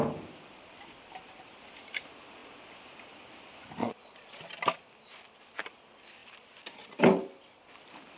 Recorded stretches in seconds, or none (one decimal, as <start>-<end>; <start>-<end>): 0.0-3.8; 4.4-8.2